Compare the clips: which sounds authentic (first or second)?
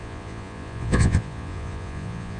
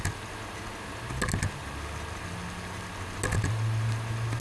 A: second